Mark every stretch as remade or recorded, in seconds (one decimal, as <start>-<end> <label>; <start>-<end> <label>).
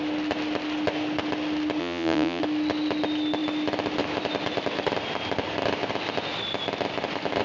0.0-1.8 recorded; 1.8-2.4 remade; 2.4-7.4 recorded